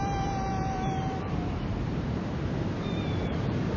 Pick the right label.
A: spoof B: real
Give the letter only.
A